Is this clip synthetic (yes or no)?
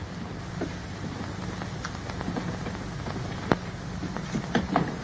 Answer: no